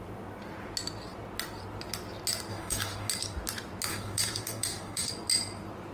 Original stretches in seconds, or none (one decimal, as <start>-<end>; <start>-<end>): 0.0-2.5; 3.1-3.9; 5.1-5.9